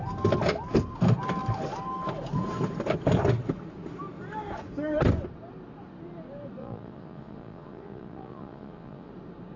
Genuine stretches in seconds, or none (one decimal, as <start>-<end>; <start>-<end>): 0.0-6.6; 9.1-9.6

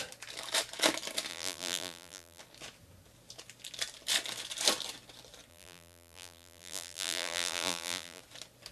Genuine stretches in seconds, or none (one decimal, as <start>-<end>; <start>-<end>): 0.0-1.3; 2.4-5.5; 8.2-8.7